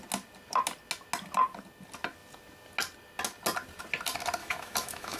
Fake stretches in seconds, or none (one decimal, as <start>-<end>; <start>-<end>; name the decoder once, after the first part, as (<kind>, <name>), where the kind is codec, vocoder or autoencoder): 4.4-5.2 (autoencoder, DAC-VAE)